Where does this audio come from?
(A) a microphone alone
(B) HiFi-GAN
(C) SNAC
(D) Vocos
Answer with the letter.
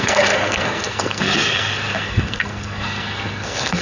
C